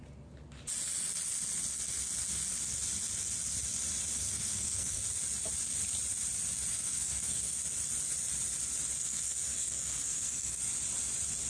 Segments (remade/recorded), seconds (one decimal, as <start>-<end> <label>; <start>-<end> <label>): 0.0-4.1 recorded; 4.1-5.0 remade; 5.0-6.7 recorded; 6.7-7.6 remade; 7.6-9.0 recorded; 9.0-10.6 remade; 10.6-11.5 recorded